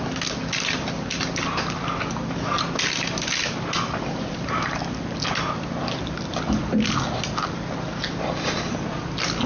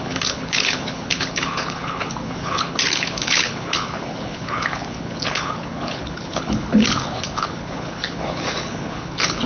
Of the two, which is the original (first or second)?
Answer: first